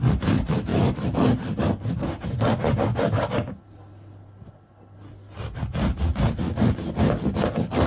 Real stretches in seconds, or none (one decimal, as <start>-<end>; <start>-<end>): 0.0-7.9